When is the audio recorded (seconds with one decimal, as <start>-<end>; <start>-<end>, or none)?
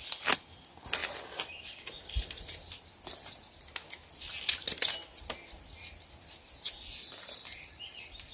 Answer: 0.0-8.3